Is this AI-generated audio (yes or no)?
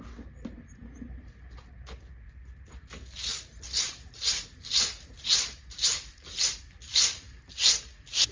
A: no